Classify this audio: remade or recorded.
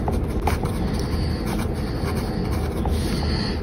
recorded